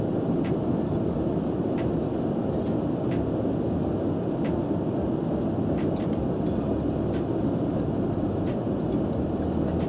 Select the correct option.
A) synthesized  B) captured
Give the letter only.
B